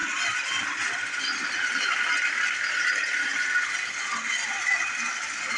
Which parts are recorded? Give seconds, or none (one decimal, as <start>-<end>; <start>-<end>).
0.0-5.6